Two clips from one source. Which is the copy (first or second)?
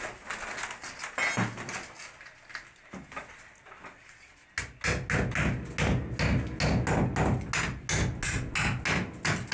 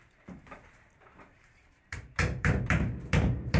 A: second